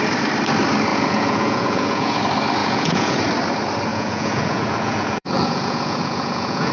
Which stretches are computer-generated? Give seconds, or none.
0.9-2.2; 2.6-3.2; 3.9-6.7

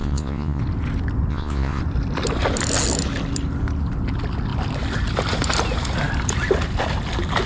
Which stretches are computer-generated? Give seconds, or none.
0.0-0.6; 1.3-1.8

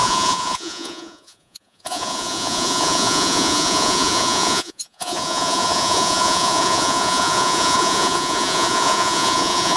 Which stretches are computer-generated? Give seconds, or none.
0.0-9.8

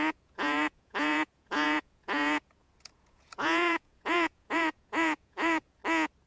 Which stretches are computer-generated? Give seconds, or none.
0.0-5.8

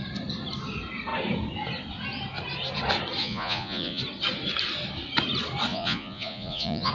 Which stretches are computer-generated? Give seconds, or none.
3.2-4.0; 5.7-6.9

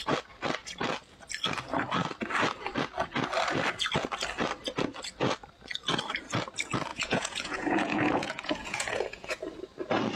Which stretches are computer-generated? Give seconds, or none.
6.9-9.3

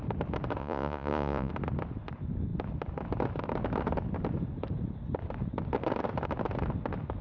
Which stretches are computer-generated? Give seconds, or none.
0.6-1.5

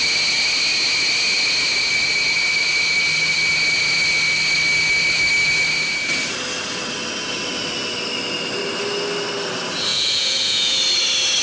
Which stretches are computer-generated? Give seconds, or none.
9.9-10.8